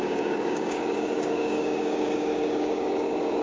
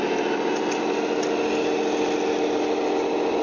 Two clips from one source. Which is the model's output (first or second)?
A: first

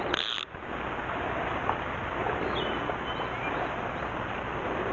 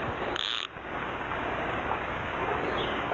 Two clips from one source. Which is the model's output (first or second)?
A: second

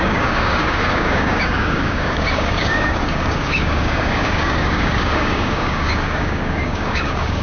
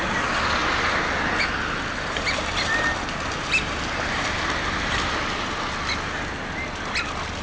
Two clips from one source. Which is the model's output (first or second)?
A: first